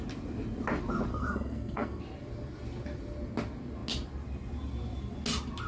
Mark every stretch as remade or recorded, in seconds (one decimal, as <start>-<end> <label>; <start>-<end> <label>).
0.0-1.1 recorded; 1.1-2.0 remade; 2.0-5.7 recorded